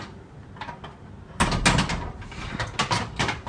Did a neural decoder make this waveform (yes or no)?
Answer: no